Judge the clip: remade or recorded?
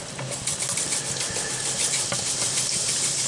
recorded